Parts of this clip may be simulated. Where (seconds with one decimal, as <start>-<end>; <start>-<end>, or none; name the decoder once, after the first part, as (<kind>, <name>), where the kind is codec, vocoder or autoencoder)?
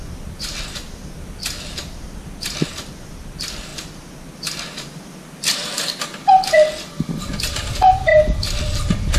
0.0-1.4 (vocoder, BigVGAN v2); 2.9-3.7; 6.9-8.1; 8.6-9.2